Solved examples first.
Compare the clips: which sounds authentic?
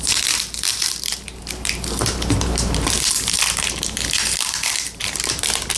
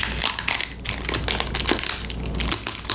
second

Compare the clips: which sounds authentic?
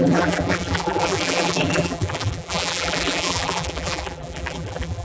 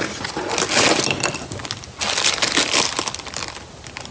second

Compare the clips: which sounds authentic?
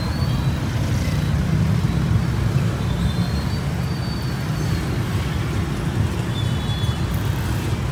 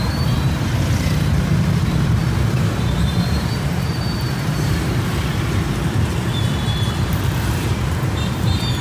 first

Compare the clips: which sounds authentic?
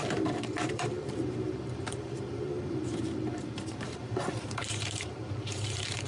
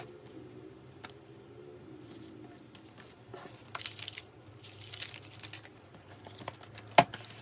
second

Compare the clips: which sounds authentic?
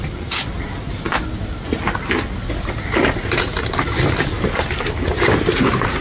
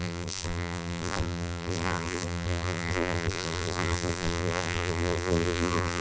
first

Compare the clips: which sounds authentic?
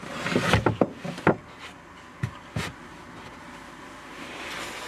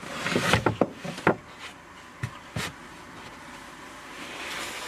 first